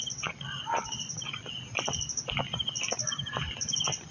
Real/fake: real